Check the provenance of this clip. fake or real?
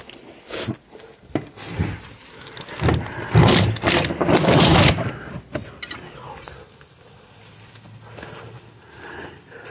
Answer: real